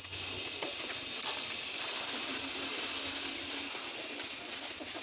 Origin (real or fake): real